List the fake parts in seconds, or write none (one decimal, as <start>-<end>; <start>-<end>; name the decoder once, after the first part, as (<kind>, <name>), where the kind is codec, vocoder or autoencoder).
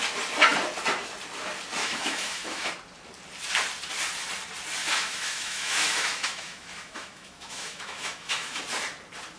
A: 1.8-2.7 (autoencoder, DAC-VAE); 4.8-8.6